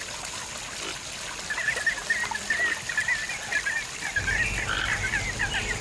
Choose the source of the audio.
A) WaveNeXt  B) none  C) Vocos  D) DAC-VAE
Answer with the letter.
B